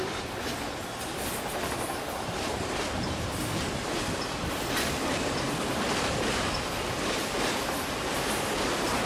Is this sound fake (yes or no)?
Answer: no